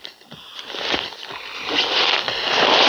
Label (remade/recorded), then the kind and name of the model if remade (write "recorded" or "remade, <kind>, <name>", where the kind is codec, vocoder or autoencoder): recorded